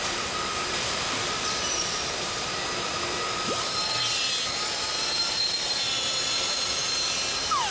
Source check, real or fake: fake